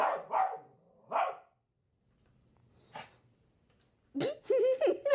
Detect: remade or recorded recorded